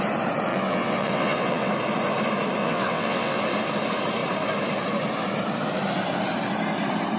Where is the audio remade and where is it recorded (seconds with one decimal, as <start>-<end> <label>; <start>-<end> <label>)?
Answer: 0.0-0.5 recorded; 0.5-1.7 remade; 1.7-2.6 recorded; 2.6-3.4 remade; 3.4-7.2 recorded